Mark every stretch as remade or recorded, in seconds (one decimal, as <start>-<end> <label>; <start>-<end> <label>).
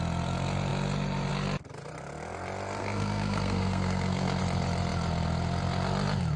0.0-2.8 recorded; 2.8-4.4 remade; 4.4-6.4 recorded